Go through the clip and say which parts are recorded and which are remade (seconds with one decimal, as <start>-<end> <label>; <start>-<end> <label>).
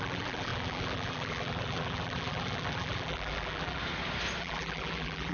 0.0-3.8 remade; 3.8-4.4 recorded; 4.4-5.3 remade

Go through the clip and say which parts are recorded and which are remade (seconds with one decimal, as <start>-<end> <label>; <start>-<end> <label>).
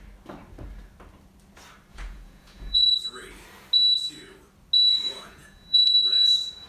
0.0-1.9 recorded; 1.9-2.9 remade; 2.9-4.9 recorded; 4.9-6.7 remade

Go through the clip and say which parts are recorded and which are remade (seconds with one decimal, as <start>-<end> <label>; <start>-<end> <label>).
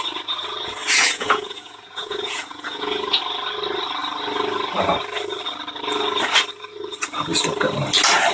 0.0-0.8 recorded; 0.8-3.2 remade; 3.2-8.3 recorded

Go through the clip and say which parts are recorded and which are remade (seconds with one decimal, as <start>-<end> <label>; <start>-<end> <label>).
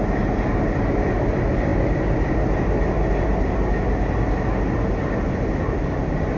0.0-6.4 recorded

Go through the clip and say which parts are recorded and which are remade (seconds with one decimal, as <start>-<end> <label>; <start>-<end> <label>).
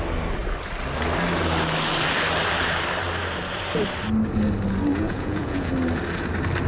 0.0-4.9 recorded; 4.9-5.7 remade; 5.7-6.7 recorded